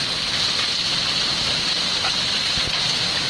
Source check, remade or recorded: recorded